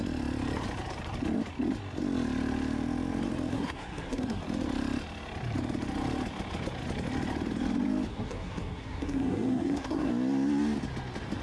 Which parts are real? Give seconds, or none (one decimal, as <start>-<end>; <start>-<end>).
0.0-3.5; 4.4-8.1; 10.1-11.4